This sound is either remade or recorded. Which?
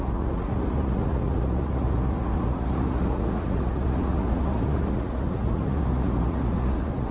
remade